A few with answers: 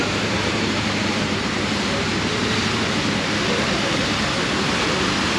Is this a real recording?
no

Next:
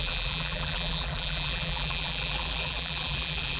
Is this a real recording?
no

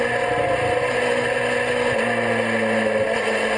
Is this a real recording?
yes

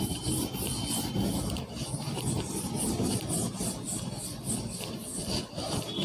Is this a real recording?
yes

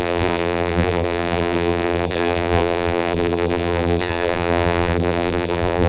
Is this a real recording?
no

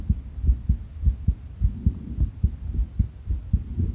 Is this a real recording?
yes